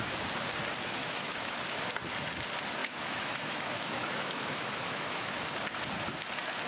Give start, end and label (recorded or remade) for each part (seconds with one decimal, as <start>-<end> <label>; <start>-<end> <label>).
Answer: 0.0-1.0 recorded; 1.0-1.6 remade; 1.6-2.8 recorded; 2.8-5.4 remade; 5.4-6.7 recorded